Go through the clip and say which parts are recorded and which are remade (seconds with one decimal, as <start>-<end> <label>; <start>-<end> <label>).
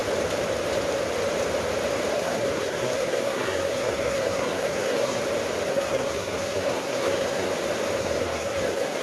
0.0-2.1 recorded; 2.1-5.2 remade; 5.2-5.7 recorded; 5.7-7.5 remade; 7.5-8.0 recorded; 8.0-9.0 remade